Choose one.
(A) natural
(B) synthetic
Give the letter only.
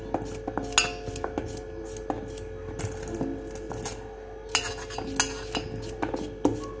A